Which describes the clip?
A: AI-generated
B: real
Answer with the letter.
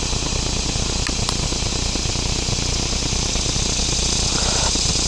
B